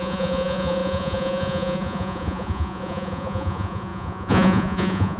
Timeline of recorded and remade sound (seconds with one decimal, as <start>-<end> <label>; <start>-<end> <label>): 0.0-5.2 remade